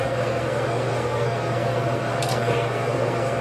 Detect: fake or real fake